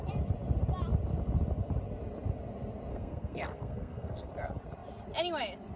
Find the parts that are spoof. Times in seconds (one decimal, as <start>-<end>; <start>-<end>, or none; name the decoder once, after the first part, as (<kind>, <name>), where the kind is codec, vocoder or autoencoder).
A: 2.9-4.3 (codec, SNAC)